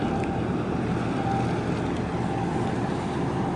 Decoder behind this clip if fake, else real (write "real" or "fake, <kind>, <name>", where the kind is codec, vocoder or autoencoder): real